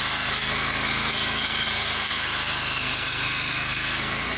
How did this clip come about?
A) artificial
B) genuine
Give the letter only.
A